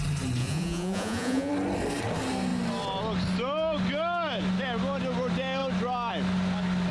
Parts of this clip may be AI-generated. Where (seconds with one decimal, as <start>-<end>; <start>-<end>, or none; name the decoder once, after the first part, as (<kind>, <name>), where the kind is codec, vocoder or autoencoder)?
0.4-1.5 (vocoder, Vocos)